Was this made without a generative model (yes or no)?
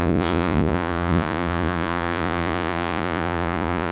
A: no